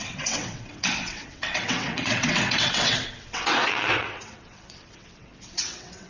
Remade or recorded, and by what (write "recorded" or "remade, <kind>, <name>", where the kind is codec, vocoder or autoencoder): remade, vocoder, WaveNeXt